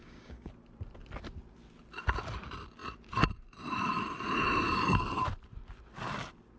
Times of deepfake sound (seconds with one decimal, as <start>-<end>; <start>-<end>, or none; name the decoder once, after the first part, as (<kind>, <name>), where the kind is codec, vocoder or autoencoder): 0.0-0.5 (codec, DAC)